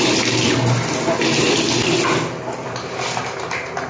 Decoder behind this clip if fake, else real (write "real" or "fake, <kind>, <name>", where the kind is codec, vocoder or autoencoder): real